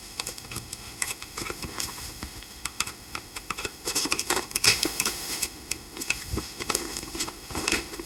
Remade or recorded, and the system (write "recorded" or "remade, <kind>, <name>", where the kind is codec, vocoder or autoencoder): remade, autoencoder, DAC-VAE